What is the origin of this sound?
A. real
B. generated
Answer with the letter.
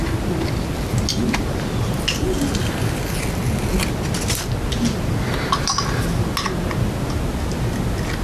A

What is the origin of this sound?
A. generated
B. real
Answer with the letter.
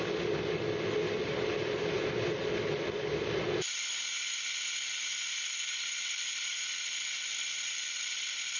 B